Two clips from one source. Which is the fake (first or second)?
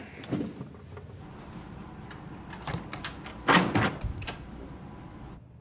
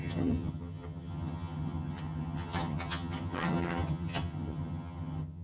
second